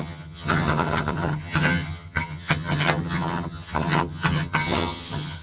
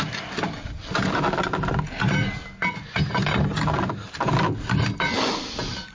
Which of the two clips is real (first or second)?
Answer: second